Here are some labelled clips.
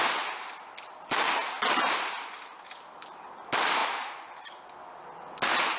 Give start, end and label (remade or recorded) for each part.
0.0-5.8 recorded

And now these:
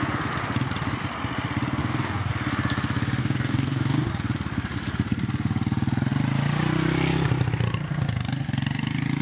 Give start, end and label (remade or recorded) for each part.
0.0-1.8 recorded; 1.8-2.3 remade; 2.3-3.2 recorded; 3.2-4.1 remade; 4.1-9.2 recorded

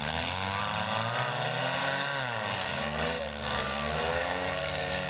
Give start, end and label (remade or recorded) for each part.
0.0-0.6 remade; 0.6-1.8 recorded; 1.8-5.1 remade